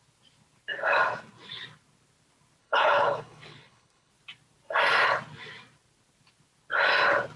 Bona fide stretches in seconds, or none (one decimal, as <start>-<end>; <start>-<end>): 0.0-2.6; 4.1-7.4